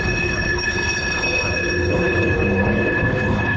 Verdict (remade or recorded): remade